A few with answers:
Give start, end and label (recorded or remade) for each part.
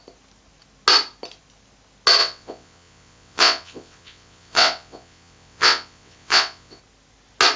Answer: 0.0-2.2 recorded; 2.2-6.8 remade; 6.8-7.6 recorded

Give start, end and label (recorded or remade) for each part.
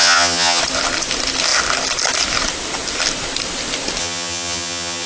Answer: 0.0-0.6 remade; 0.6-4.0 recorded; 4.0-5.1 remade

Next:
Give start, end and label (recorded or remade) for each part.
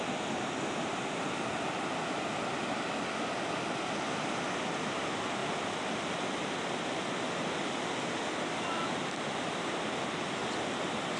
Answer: 0.0-11.2 recorded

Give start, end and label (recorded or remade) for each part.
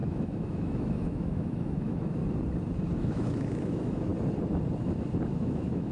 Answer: 0.0-2.2 remade; 2.2-3.0 recorded; 3.0-4.1 remade; 4.1-5.3 recorded; 5.3-5.9 remade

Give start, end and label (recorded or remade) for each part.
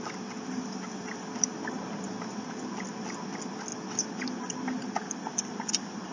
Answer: 0.0-6.1 recorded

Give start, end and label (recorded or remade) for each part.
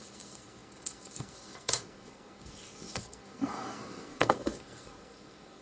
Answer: 0.0-5.6 remade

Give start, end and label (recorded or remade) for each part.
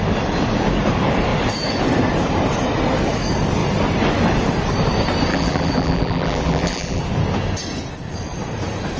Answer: 0.0-5.3 recorded; 5.3-7.0 remade; 7.0-9.0 recorded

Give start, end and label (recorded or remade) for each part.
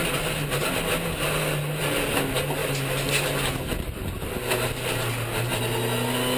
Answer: 0.0-6.4 recorded